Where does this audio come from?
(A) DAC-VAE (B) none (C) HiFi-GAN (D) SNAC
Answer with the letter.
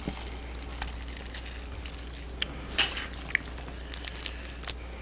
B